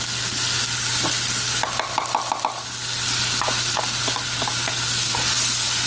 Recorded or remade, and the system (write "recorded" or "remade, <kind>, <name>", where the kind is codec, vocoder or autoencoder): recorded